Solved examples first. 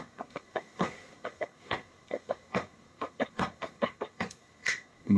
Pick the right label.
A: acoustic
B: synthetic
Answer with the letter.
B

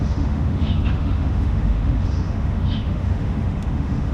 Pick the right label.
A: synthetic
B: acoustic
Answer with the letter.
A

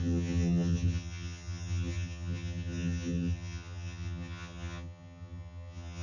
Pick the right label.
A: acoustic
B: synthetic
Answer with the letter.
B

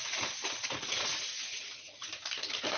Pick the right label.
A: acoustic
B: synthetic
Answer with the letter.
B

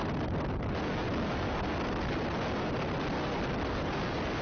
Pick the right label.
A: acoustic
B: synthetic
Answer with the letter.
A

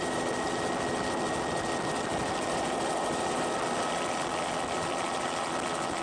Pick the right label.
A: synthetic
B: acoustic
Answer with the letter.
B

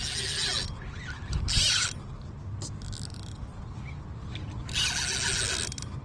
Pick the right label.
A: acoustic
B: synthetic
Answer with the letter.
A